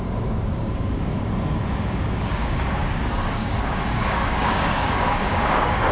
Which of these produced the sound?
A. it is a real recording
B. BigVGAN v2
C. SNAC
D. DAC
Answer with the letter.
D